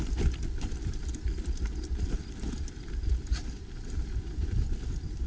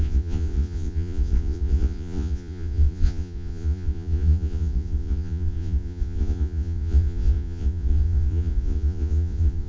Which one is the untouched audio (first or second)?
first